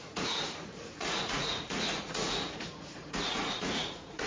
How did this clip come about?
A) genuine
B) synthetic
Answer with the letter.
B